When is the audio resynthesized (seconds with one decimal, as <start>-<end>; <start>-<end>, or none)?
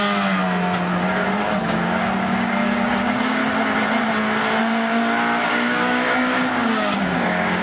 0.0-0.4; 1.1-3.4; 4.6-7.6